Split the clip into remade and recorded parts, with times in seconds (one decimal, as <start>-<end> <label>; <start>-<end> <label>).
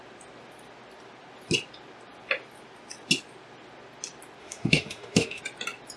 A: 0.0-4.4 recorded; 4.4-5.4 remade; 5.4-6.0 recorded